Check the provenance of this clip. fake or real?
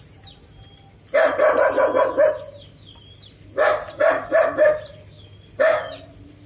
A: real